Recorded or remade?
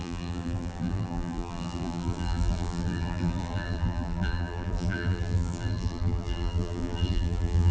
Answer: remade